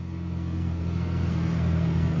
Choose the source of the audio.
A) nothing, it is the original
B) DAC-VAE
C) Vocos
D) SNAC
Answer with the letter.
D